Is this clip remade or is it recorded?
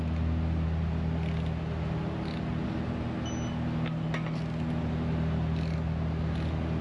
recorded